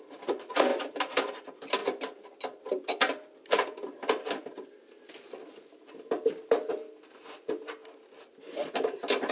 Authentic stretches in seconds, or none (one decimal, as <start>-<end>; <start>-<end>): 0.0-9.3